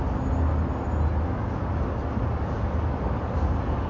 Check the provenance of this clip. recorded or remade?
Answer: recorded